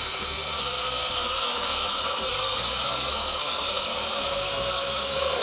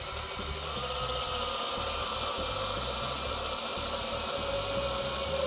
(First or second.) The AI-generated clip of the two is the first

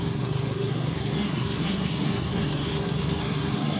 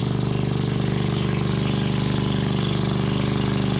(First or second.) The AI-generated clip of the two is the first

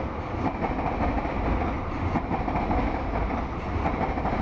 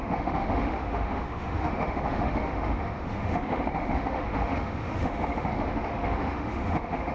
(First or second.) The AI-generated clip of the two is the second